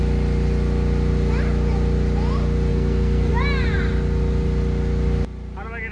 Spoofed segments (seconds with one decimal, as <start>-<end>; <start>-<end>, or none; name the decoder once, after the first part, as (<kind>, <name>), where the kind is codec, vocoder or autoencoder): 2.7-3.3 (codec, SNAC)